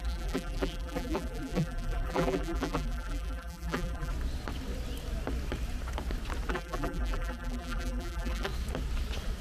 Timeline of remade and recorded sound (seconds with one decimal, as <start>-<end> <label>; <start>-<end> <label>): 0.0-4.1 remade; 4.1-6.5 recorded; 6.5-8.5 remade; 8.5-9.4 recorded